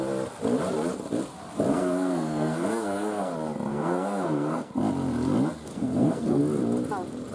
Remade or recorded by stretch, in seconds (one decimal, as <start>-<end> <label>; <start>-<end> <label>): 0.0-1.7 recorded; 1.7-3.3 remade; 3.3-3.7 recorded; 3.7-4.7 remade; 4.7-5.7 recorded; 5.7-6.4 remade; 6.4-7.3 recorded